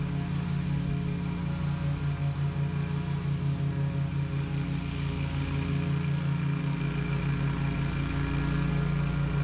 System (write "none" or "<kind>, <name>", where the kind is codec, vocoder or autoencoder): none